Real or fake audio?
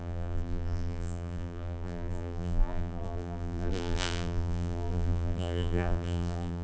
fake